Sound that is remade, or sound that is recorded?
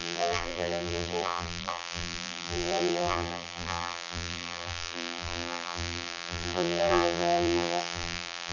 remade